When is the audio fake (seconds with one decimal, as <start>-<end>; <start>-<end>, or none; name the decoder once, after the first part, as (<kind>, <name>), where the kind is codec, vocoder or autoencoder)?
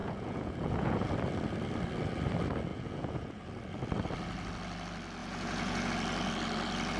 0.0-1.1 (vocoder, Vocos); 2.7-3.5; 5.2-5.9